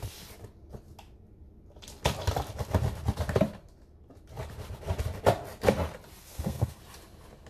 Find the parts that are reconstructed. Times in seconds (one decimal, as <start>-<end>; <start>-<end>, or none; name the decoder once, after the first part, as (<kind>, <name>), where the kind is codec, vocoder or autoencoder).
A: 6.2-6.8 (codec, SNAC)